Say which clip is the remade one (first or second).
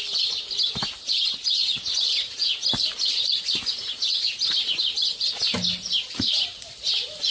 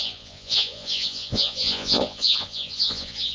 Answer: second